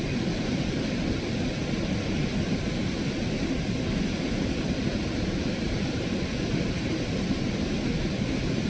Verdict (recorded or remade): recorded